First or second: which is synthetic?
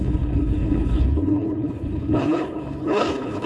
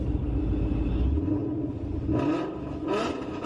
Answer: first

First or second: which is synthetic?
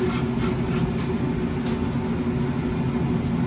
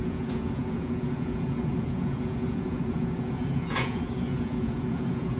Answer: second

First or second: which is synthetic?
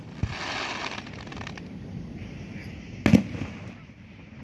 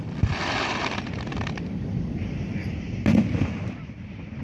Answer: second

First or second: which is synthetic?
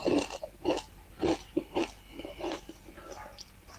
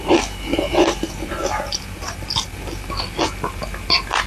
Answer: first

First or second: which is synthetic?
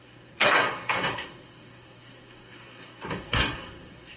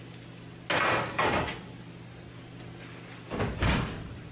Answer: first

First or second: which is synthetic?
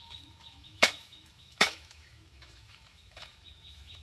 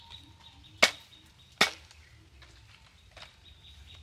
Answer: first